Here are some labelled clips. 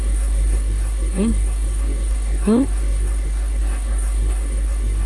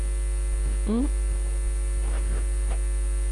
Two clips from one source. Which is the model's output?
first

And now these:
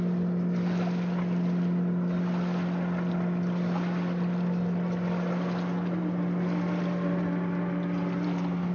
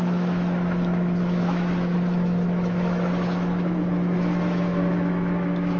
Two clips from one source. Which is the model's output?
second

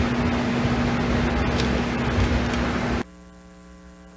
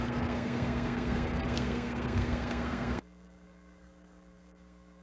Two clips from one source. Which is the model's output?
second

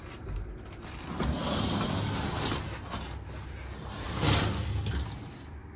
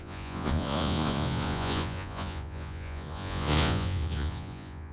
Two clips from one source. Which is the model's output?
second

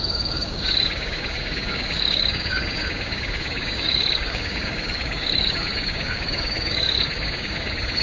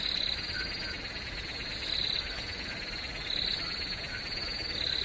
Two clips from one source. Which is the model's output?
first